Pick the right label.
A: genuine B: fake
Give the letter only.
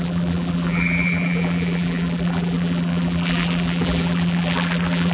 B